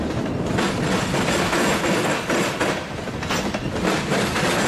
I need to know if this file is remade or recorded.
recorded